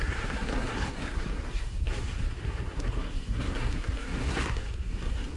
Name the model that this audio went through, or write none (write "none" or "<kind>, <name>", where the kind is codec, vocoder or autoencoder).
codec, SNAC